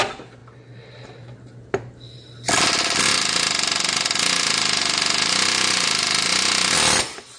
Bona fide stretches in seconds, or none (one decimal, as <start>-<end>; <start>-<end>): 0.0-7.4